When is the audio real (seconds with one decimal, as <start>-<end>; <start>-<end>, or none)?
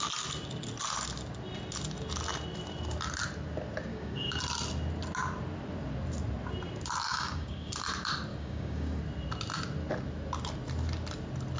0.0-3.9; 4.4-7.1; 7.7-8.3; 9.0-11.6